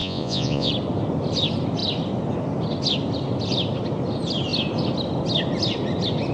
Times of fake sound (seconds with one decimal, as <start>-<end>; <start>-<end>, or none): 0.0-0.7